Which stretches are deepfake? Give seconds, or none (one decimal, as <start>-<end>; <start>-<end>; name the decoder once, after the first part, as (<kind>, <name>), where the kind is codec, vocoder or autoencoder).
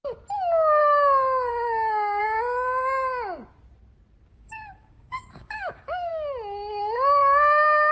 0.8-2.2 (codec, DAC); 4.3-6.1; 7.2-7.9